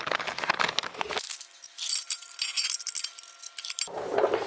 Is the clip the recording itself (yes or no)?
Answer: yes